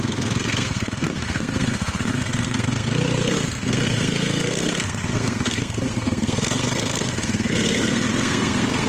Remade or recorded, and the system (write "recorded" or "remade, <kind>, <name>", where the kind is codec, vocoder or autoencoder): remade, codec, SNAC